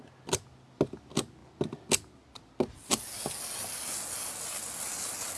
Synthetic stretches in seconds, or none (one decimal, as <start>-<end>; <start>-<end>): none